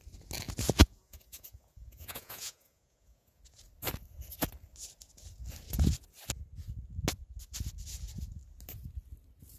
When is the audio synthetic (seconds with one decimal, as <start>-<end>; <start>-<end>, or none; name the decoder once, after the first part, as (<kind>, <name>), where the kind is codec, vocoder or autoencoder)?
0.8-3.4 (vocoder, Vocos)